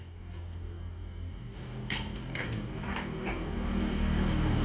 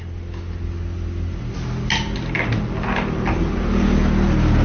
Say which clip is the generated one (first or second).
first